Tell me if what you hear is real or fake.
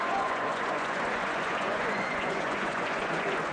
fake